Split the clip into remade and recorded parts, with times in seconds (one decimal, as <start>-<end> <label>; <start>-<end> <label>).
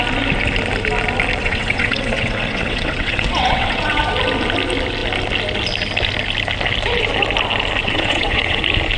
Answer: 0.0-1.4 recorded; 1.4-4.0 remade; 4.0-7.8 recorded; 7.8-8.6 remade; 8.6-9.0 recorded